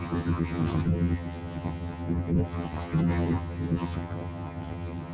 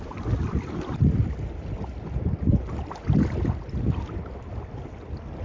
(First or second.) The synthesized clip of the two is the first